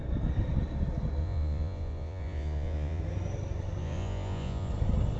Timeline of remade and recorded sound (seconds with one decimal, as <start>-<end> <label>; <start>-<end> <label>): 0.0-1.2 recorded; 1.2-3.0 remade; 3.0-3.8 recorded; 3.8-4.7 remade; 4.7-5.2 recorded